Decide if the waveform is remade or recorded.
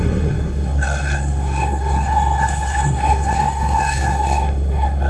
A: remade